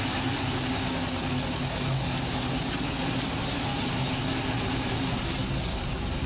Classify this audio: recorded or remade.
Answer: recorded